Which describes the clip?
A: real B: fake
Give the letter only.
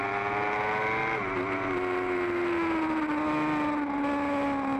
A